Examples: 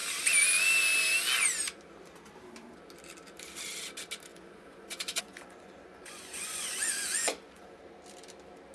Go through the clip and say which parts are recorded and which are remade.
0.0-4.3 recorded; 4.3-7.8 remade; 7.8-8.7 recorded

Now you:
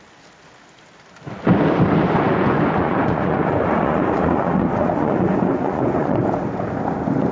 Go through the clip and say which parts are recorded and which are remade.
0.0-2.3 recorded; 2.3-6.2 remade; 6.2-7.3 recorded

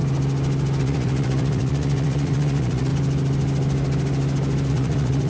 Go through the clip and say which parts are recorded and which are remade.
0.0-0.8 recorded; 0.8-2.9 remade; 2.9-4.7 recorded; 4.7-5.3 remade

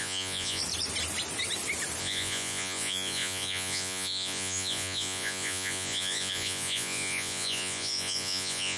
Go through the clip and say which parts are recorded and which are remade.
0.0-0.6 remade; 0.6-2.0 recorded; 2.0-8.8 remade

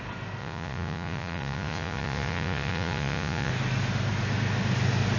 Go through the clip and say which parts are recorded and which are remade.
0.0-0.4 recorded; 0.4-3.5 remade; 3.5-5.2 recorded

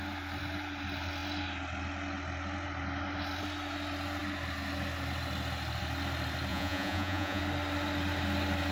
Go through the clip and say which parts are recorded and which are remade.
0.0-6.5 recorded; 6.5-7.4 remade; 7.4-8.7 recorded

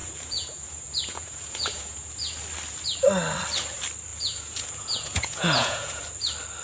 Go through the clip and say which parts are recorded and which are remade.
0.0-2.1 remade; 2.1-4.1 recorded; 4.1-6.0 remade; 6.0-6.6 recorded

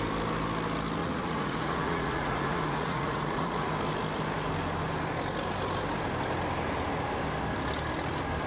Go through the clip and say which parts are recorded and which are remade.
0.0-1.0 recorded; 1.0-3.7 remade; 3.7-8.5 recorded